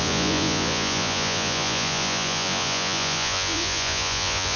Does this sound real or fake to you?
fake